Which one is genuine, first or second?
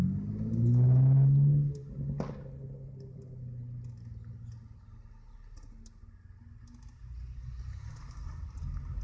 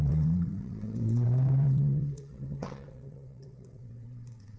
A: first